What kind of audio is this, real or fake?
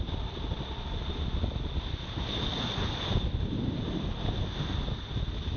real